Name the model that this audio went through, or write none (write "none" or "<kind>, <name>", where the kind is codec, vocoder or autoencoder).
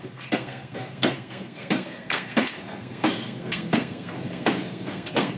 codec, SNAC